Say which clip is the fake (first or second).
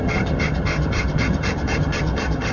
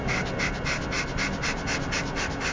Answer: first